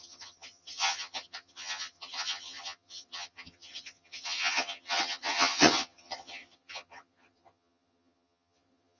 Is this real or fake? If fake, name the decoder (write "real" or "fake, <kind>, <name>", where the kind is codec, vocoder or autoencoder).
fake, vocoder, HiFi-GAN